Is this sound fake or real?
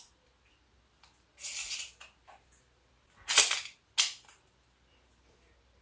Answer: real